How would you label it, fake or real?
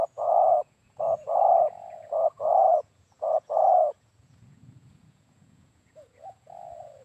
fake